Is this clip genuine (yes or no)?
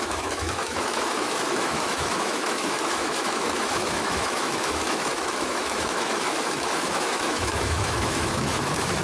no